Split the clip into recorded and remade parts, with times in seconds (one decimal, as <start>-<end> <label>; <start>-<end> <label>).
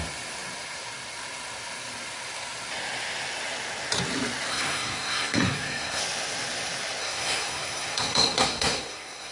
0.0-4.5 recorded; 4.5-6.0 remade; 6.0-7.0 recorded; 7.0-9.3 remade